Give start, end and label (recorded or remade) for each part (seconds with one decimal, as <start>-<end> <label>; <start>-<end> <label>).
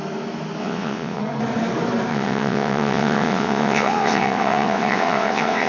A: 0.0-0.6 recorded; 0.6-1.2 remade; 1.2-2.1 recorded; 2.1-5.7 remade